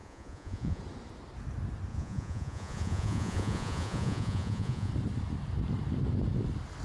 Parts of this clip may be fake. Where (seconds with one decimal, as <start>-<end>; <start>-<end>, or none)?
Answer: 0.0-0.8; 1.9-4.9